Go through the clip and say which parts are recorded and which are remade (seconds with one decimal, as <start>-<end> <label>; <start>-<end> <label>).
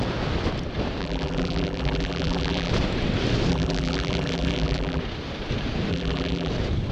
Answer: 0.0-1.0 recorded; 1.0-2.7 remade; 2.7-3.5 recorded; 3.5-5.0 remade; 5.0-5.9 recorded; 5.9-6.5 remade; 6.5-6.9 recorded